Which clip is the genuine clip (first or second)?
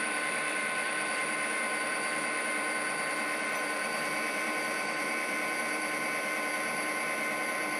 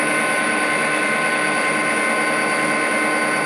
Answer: second